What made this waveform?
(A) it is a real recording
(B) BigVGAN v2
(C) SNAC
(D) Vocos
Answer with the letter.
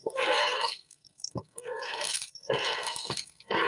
C